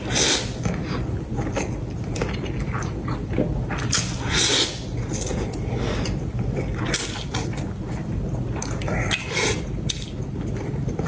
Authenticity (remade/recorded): recorded